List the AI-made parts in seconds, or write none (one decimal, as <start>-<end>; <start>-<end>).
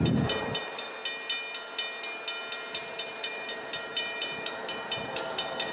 0.0-1.0; 2.7-5.7